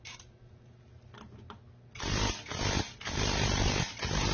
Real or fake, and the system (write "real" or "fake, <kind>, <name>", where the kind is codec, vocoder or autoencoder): real